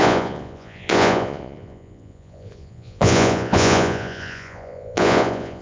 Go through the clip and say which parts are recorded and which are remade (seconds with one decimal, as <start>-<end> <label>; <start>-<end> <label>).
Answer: 0.0-5.6 remade